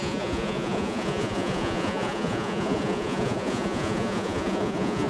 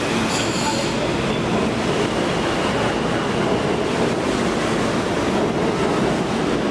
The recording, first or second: second